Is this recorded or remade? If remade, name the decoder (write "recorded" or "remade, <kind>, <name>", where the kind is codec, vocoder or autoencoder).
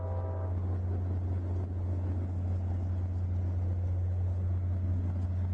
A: recorded